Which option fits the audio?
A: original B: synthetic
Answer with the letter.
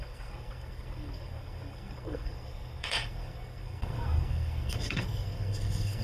B